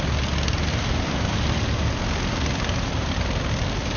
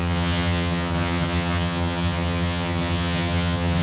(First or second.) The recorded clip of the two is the first